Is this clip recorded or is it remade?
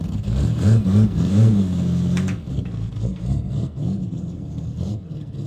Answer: remade